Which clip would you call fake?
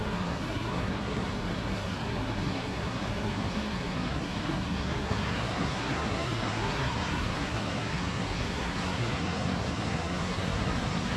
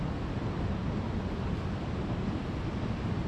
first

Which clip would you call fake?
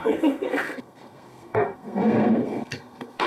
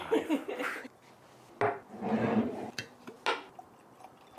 first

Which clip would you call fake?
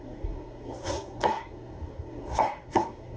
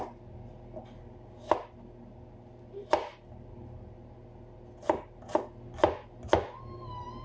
first